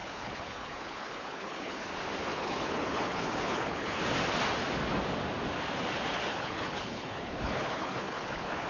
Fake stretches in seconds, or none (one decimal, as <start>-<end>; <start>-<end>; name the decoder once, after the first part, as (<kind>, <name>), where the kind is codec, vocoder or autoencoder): 0.0-1.9 (codec, HILCodec); 2.3-4.0; 6.3-8.7